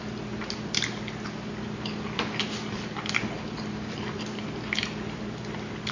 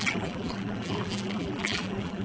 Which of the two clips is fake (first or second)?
second